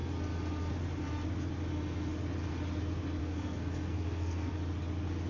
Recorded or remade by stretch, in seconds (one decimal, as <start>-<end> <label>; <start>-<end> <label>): 0.0-3.2 recorded; 3.2-4.5 remade; 4.5-5.3 recorded